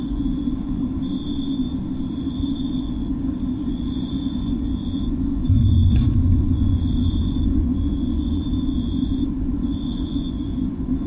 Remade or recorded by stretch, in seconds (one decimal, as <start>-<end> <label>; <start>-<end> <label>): 0.0-0.8 remade; 0.8-2.6 recorded; 2.6-11.1 remade